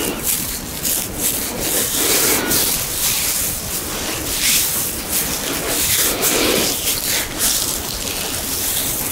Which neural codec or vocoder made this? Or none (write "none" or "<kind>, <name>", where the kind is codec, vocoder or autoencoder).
none